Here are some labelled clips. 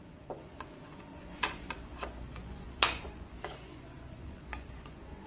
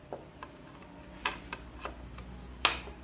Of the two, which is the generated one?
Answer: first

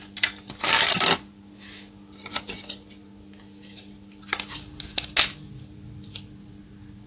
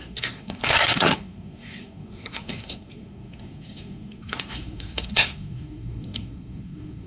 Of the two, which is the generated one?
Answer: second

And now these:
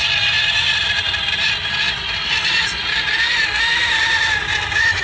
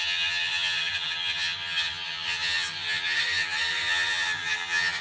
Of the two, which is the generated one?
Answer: second